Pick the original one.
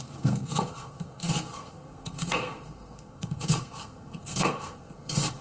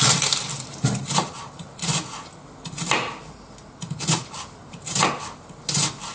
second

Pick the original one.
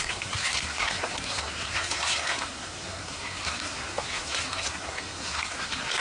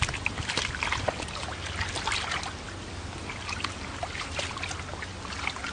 second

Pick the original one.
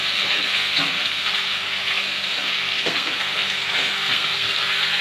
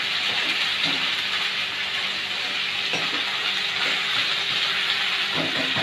second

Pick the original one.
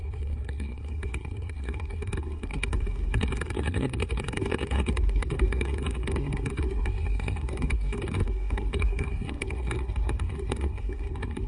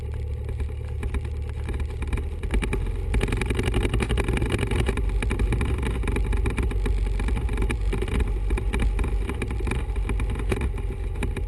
second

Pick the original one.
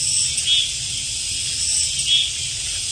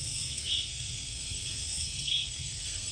first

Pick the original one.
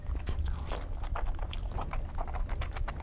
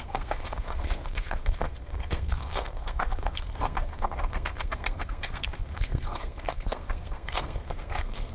first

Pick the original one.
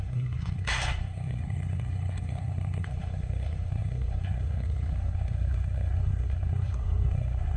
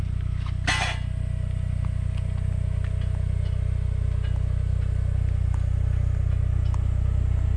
second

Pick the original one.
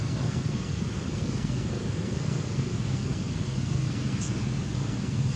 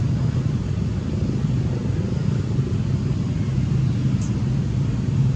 second